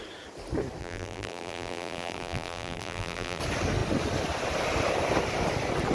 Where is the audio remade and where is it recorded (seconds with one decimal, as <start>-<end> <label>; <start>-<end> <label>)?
0.0-0.8 recorded; 0.8-3.4 remade; 3.4-5.9 recorded